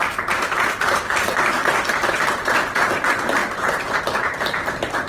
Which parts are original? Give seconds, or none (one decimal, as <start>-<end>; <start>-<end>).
1.6-2.1